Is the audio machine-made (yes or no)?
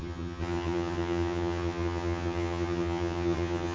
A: yes